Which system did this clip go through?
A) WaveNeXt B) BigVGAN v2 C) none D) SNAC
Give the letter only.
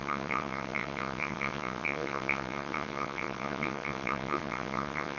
A